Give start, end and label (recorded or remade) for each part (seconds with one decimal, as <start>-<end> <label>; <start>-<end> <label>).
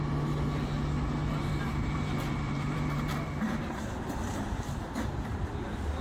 0.0-1.2 recorded; 1.2-4.8 remade; 4.8-6.0 recorded